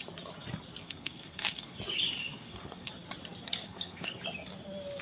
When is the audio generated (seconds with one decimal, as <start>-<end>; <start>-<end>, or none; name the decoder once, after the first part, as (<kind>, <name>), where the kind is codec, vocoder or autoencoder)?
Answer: 0.8-1.7 (codec, SNAC); 2.2-2.9; 3.6-4.2